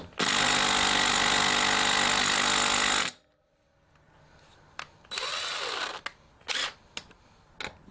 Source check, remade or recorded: recorded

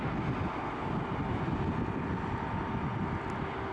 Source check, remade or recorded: recorded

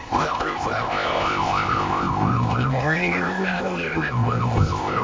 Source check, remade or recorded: remade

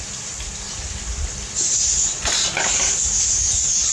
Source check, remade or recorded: recorded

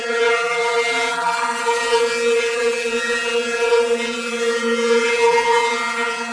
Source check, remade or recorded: remade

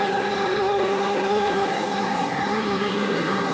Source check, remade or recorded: remade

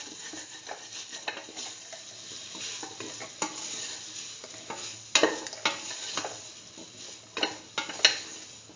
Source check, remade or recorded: recorded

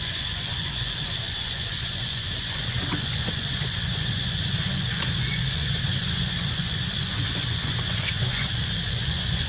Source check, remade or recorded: remade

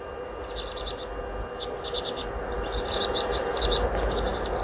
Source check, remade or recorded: recorded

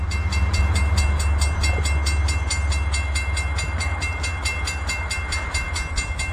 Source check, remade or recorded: recorded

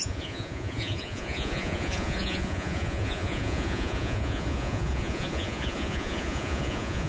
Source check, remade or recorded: remade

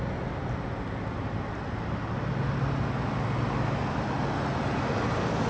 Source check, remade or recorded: recorded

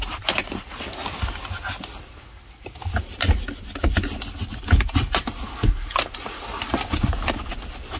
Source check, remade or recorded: recorded